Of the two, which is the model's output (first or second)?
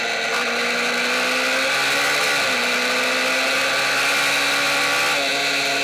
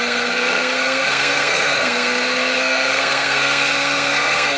second